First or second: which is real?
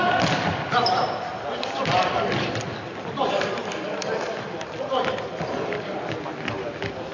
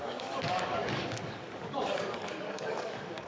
first